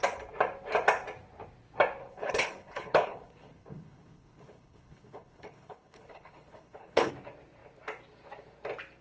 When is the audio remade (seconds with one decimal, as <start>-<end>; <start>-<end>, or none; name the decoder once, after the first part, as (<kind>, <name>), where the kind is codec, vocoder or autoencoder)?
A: 2.0-7.1 (codec, HILCodec)